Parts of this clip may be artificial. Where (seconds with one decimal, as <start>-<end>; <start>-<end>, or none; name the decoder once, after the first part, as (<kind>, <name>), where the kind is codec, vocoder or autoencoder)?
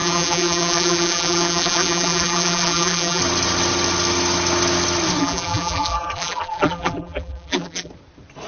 0.0-3.2 (vocoder, BigVGAN v2); 5.2-7.9